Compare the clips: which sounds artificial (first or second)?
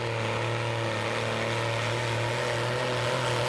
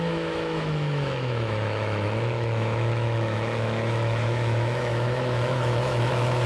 second